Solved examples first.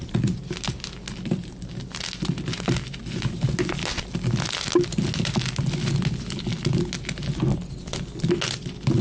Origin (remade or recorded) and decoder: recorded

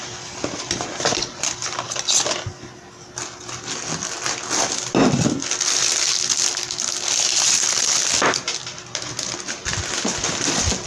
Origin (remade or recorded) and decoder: recorded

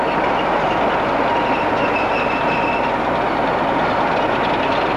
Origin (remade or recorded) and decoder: recorded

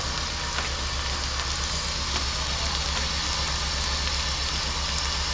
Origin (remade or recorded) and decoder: recorded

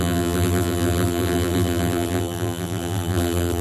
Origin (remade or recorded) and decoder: remade, vocoder, BigVGAN v2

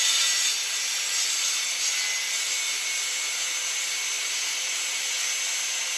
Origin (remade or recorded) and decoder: recorded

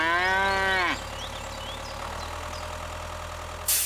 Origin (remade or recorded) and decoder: recorded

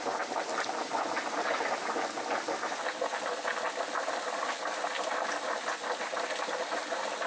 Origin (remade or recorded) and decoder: recorded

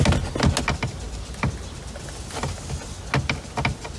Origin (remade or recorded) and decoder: recorded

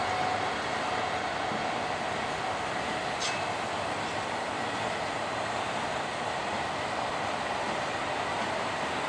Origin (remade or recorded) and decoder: recorded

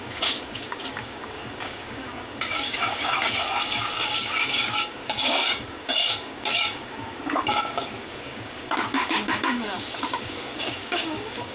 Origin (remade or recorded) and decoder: remade, codec, DAC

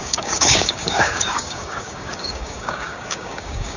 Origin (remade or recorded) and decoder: remade, codec, DAC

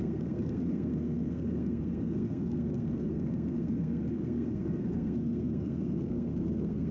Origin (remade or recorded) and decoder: remade, codec, SNAC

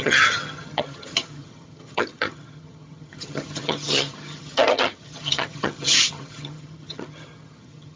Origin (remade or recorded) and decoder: remade, vocoder, HiFi-GAN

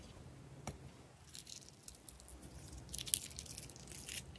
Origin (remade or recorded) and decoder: recorded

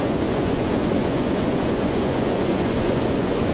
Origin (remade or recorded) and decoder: remade, vocoder, Vocos